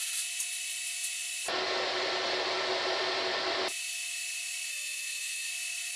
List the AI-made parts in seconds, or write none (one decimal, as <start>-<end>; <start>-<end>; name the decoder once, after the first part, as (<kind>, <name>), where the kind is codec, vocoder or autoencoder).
4.7-5.5 (autoencoder, DAC-VAE)